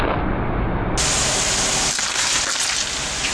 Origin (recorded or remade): recorded